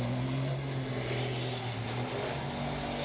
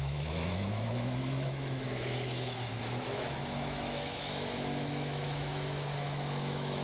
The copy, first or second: second